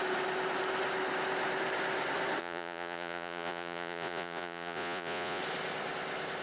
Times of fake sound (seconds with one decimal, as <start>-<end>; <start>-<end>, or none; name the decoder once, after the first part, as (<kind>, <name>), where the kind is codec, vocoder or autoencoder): 2.4-5.4 (vocoder, Vocos)